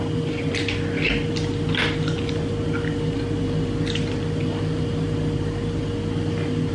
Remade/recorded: recorded